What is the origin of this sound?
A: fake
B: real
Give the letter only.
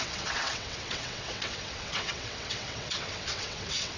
A